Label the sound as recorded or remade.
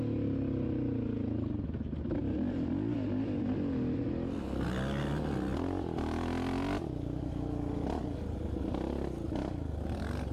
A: recorded